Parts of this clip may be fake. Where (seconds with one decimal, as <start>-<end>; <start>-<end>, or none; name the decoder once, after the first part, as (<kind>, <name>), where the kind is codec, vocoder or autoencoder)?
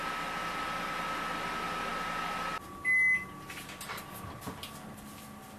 none